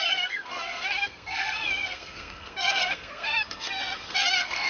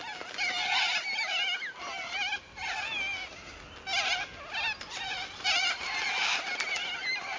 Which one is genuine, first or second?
second